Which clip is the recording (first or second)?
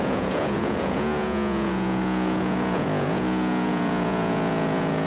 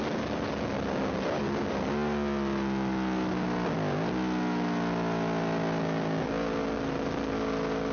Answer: second